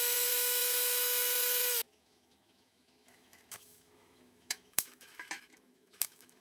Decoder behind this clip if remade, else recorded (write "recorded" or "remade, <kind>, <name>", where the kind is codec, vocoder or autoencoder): remade, autoencoder, DAC-VAE